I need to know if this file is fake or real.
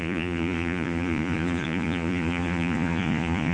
fake